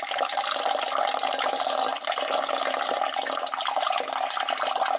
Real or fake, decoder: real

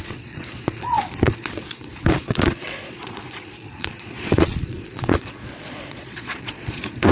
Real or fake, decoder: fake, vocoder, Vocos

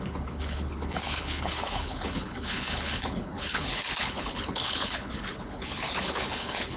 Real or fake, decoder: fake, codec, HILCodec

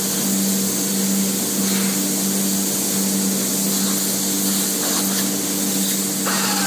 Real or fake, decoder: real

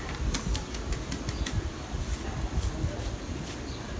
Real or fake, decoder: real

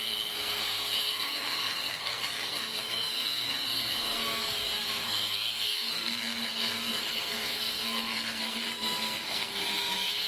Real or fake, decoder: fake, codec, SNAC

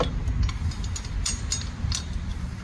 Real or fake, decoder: real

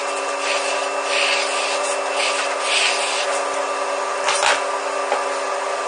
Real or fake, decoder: real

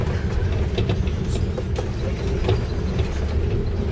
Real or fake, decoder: real